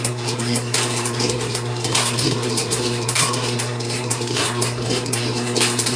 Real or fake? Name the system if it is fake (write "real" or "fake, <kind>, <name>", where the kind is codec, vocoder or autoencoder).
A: fake, codec, SNAC